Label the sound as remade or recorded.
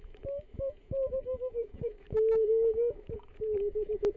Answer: remade